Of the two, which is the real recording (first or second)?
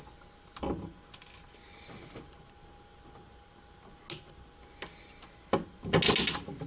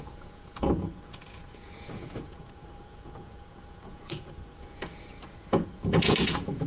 first